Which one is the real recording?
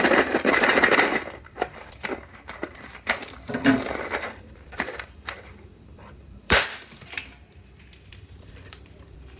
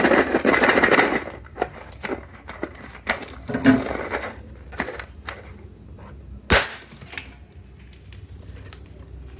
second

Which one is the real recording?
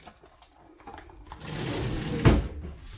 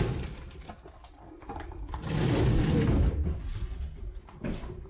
first